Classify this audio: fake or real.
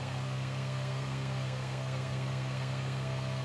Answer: fake